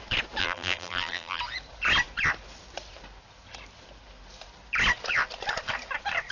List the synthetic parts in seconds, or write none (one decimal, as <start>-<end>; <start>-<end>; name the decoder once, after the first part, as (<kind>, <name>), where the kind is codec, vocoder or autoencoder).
0.4-1.4 (vocoder, BigVGAN v2)

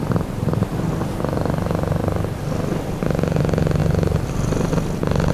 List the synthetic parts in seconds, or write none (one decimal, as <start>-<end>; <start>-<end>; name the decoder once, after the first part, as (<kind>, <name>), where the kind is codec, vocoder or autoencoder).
none

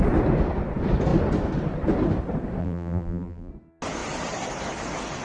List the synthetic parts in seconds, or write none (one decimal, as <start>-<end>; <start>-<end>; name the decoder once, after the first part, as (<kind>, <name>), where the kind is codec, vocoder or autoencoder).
2.6-3.5 (vocoder, BigVGAN v2)

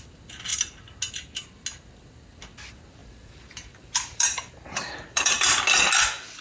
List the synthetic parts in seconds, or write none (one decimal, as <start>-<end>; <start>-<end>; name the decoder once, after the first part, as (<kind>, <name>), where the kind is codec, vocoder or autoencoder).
3.0-5.6 (vocoder, BigVGAN v2)

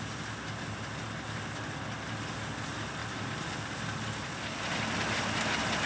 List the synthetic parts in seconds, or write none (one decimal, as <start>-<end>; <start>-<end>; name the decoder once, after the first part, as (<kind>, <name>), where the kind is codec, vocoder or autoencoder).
3.0-3.5 (vocoder, BigVGAN v2)

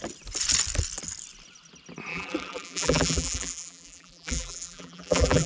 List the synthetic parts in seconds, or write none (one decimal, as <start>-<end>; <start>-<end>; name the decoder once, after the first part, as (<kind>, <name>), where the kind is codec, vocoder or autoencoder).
2.1-5.5 (vocoder, BigVGAN v2)

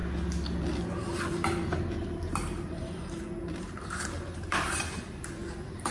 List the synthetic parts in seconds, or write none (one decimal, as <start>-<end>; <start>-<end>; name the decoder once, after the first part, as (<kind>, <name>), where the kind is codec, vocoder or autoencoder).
1.3-4.8 (vocoder, BigVGAN v2)